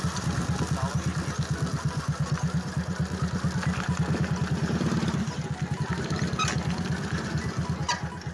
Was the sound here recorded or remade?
recorded